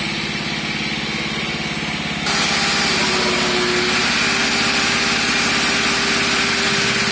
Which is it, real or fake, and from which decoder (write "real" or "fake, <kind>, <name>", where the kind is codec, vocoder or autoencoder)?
real